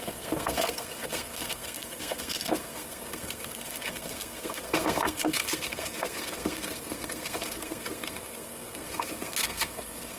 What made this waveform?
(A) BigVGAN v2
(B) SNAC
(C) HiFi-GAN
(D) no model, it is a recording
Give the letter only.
B